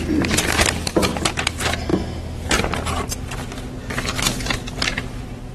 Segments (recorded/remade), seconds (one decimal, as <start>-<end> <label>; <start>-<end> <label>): 0.0-5.5 recorded